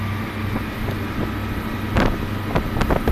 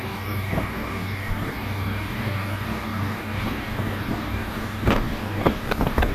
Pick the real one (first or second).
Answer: first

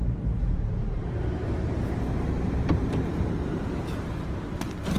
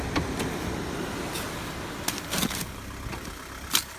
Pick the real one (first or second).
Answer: second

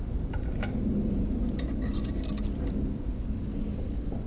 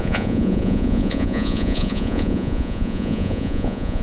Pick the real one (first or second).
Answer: first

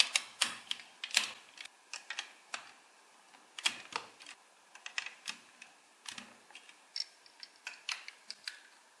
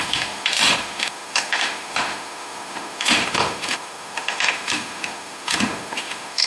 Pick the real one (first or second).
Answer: first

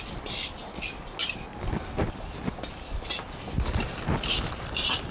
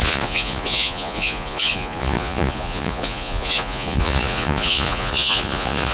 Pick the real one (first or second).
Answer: first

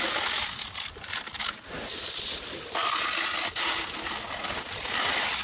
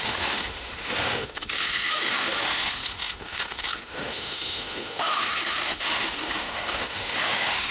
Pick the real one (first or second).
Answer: first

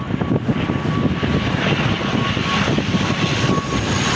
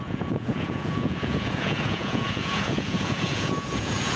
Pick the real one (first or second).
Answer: first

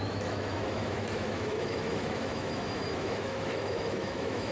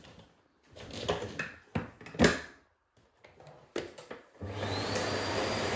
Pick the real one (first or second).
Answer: second